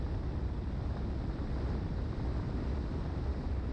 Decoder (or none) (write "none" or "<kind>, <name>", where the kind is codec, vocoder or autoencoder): none